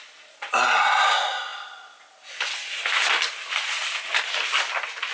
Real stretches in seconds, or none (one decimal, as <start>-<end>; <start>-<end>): 0.0-5.1